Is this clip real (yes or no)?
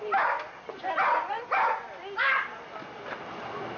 yes